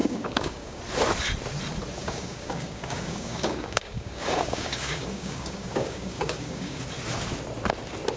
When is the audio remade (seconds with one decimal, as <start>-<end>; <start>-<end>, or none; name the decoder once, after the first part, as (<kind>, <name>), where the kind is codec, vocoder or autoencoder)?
0.0-0.8 (codec, DAC); 2.0-6.8